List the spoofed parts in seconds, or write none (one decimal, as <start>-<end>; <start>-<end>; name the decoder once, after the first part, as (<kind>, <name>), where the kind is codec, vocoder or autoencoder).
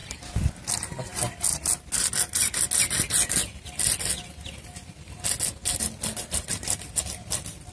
none